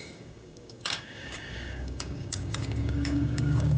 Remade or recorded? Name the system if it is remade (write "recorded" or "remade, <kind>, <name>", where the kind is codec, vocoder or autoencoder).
remade, codec, DAC